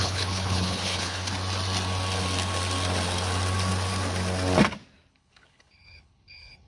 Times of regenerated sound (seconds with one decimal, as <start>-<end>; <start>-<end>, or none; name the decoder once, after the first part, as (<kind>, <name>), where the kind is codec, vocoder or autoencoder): 0.0-1.3 (codec, HILCodec); 5.1-6.7